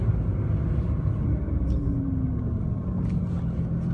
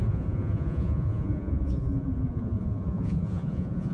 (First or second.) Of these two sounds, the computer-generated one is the second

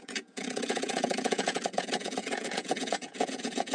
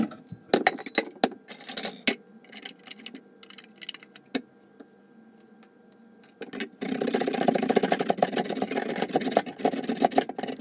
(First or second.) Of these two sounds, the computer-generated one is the first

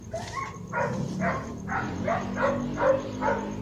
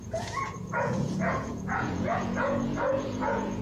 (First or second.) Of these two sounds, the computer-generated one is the second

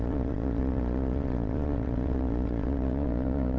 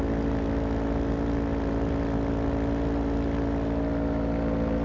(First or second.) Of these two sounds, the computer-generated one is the first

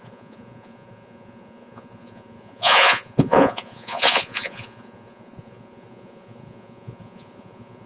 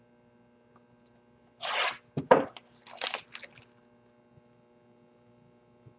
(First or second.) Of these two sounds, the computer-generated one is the first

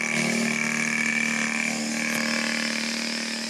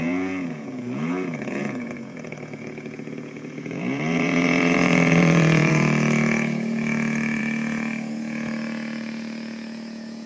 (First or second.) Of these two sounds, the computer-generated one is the second